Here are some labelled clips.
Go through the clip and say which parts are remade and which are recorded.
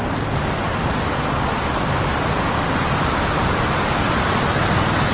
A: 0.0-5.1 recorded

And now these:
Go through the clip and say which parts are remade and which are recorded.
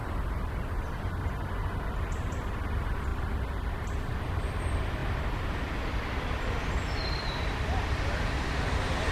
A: 0.0-1.0 remade; 1.0-3.1 recorded; 3.1-4.2 remade; 4.2-5.0 recorded; 5.0-8.1 remade; 8.1-9.1 recorded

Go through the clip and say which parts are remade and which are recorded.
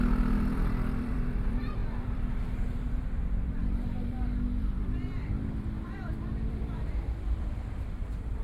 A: 0.0-8.4 remade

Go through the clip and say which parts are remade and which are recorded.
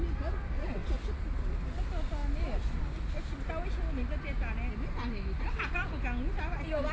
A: 0.0-6.9 recorded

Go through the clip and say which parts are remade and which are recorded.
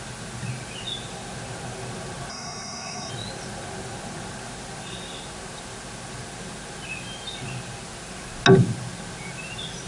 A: 0.0-2.3 recorded; 2.3-3.1 remade; 3.1-9.9 recorded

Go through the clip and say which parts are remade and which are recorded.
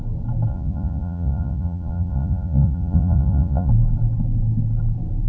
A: 0.0-0.5 recorded; 0.5-3.7 remade; 3.7-5.3 recorded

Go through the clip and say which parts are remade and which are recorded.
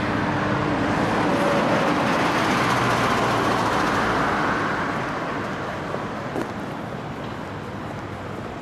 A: 0.0-8.6 recorded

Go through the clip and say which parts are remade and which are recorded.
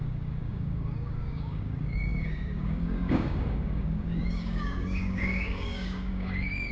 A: 0.0-6.7 remade